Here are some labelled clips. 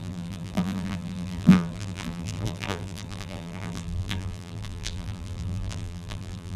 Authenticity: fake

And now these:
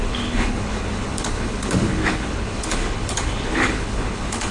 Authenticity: fake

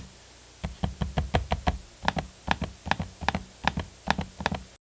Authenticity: real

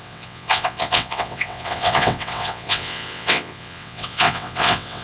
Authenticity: fake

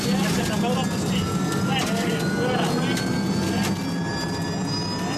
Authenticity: real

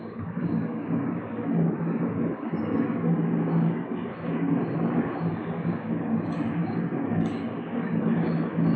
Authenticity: fake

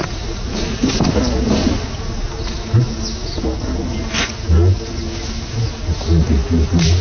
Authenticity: real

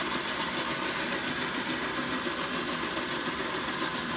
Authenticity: real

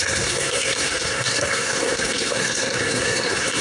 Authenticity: fake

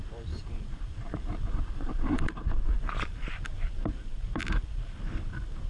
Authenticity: fake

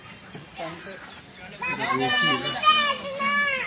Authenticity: real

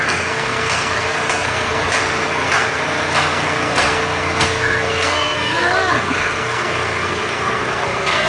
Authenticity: fake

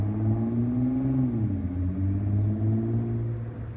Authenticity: real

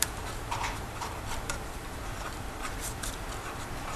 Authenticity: fake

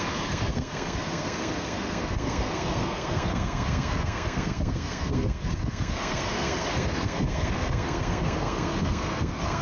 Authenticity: fake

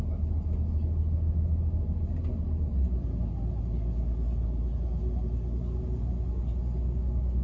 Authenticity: real